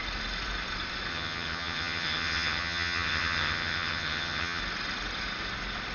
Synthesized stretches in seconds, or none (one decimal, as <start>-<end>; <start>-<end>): 1.1-4.6

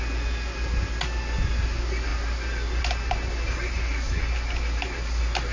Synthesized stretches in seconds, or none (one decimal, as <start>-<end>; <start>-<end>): none

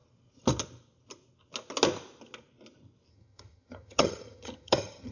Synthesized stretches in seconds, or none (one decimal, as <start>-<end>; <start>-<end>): 3.1-5.1

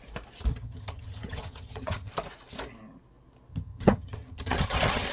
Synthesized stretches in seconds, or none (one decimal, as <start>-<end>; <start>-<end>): 0.5-2.1; 3.5-5.1

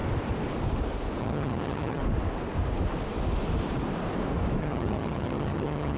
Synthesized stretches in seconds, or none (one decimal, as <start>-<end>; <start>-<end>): 1.2-2.0; 4.6-6.0

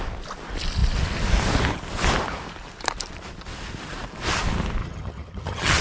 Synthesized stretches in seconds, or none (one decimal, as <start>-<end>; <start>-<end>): 4.8-5.8

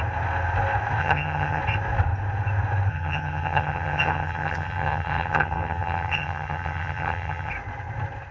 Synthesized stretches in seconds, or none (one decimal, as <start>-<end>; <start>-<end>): 1.0-1.6; 2.9-7.5

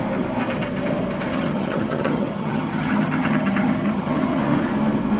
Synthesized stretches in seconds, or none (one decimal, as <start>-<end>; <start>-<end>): 1.3-4.4